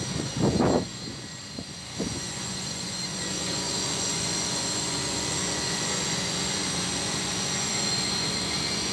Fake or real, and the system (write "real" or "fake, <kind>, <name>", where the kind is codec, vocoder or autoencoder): fake, vocoder, Vocos